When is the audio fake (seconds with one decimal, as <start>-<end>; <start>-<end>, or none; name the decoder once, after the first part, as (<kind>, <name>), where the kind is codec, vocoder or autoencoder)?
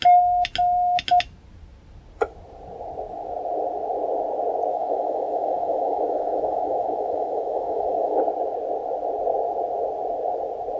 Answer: 4.7-8.2 (autoencoder, DAC-VAE)